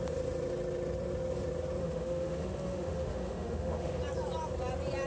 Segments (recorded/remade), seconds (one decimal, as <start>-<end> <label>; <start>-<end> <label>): 0.0-1.8 recorded; 1.8-4.0 remade; 4.0-5.1 recorded